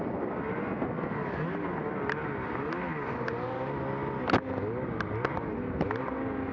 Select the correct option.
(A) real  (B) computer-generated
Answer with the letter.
A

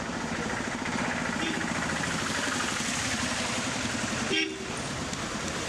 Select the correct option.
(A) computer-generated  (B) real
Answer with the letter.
A